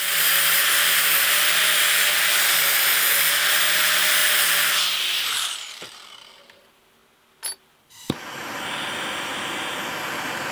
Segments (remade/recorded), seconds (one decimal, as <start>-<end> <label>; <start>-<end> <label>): 0.0-7.0 remade; 7.0-7.6 recorded; 7.6-9.3 remade; 9.3-10.5 recorded